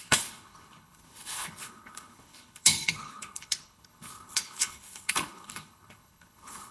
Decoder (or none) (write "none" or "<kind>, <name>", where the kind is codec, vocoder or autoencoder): codec, HILCodec